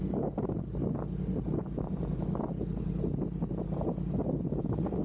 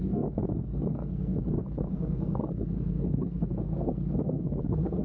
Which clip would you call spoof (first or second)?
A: second